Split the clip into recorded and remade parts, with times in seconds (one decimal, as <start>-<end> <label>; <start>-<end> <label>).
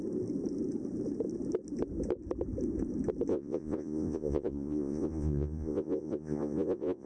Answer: 0.0-3.3 recorded; 3.3-7.1 remade